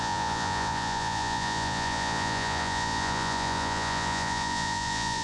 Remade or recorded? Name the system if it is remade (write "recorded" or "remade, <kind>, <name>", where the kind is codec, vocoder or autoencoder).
remade, vocoder, Vocos